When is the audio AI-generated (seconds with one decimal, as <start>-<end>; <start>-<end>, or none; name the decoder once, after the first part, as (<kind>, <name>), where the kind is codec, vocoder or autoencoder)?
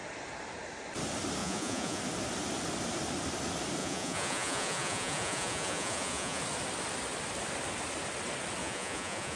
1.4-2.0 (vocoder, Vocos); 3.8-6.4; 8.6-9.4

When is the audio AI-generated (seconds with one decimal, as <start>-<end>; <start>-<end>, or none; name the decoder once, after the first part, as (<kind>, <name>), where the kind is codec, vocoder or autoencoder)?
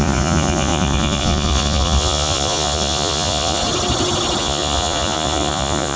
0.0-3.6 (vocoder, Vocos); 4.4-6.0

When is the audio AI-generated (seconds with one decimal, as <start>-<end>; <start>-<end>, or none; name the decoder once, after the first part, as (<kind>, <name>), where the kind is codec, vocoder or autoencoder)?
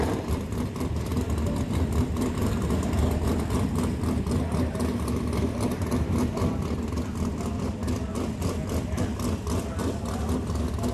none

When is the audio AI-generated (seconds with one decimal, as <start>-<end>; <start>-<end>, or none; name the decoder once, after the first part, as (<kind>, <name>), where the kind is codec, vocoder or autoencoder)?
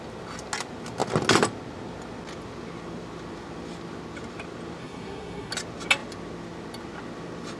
4.8-5.5 (codec, SNAC)